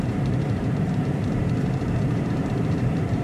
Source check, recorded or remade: remade